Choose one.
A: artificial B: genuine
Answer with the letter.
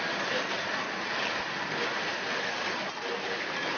B